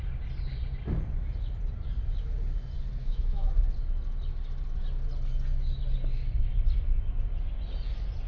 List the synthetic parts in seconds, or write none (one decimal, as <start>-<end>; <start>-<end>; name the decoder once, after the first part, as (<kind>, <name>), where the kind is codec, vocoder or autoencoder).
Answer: 3.0-3.6 (autoencoder, DAC-VAE)